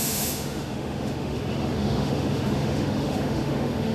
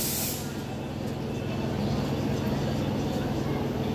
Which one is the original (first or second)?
second